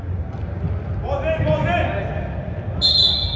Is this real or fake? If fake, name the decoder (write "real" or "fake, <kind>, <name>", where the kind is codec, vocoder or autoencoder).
real